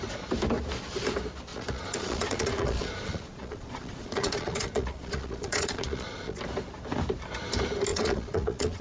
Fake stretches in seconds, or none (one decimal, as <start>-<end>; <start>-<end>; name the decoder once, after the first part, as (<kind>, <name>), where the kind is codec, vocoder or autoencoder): 1.5-6.4 (vocoder, Vocos); 7.9-8.8